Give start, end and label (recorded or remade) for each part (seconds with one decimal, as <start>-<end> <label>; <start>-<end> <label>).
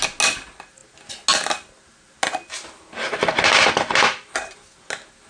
0.0-5.3 recorded